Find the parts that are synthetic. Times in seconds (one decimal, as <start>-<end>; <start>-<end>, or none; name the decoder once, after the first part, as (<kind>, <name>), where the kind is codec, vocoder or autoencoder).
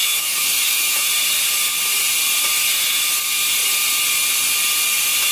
0.0-1.1 (autoencoder, DAC-VAE)